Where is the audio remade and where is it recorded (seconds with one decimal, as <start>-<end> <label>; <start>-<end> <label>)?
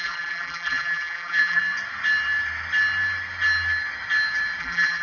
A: 0.0-1.6 remade; 1.6-4.6 recorded; 4.6-5.0 remade